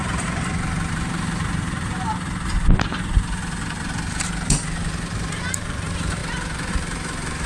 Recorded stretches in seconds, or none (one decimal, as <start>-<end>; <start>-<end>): 2.1-4.1; 6.2-6.7